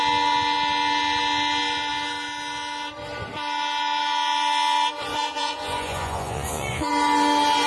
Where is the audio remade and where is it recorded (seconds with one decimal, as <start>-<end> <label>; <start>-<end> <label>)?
0.0-5.1 recorded; 5.1-6.9 remade; 6.9-7.7 recorded